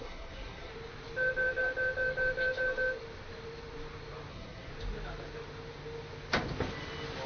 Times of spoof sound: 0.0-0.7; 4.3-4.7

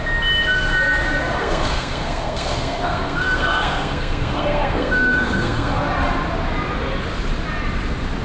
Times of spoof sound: 1.4-5.8

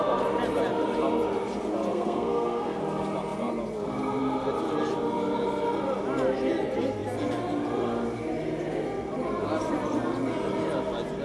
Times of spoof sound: 1.9-2.8

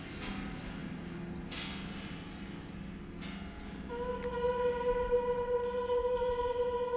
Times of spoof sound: none